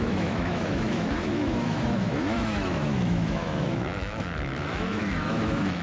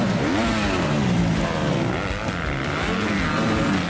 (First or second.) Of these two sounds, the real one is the second